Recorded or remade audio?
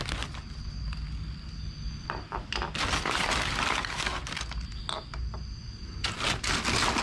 recorded